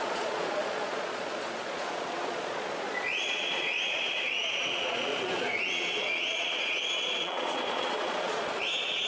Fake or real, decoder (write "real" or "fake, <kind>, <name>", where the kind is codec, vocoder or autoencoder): fake, vocoder, Vocos